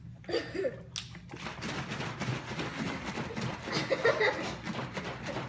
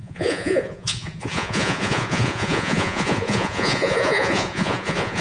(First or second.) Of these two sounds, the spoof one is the second